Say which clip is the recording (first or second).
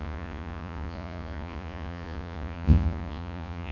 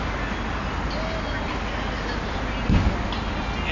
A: second